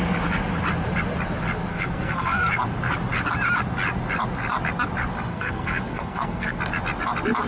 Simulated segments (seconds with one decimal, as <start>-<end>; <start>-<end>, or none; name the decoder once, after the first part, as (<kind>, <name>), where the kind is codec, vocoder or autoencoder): 1.7-2.5 (codec, SNAC); 5.3-6.6